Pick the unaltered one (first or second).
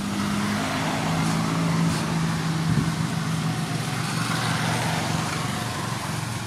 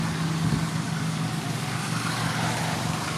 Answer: first